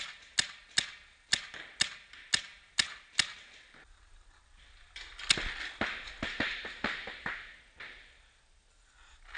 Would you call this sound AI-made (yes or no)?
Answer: no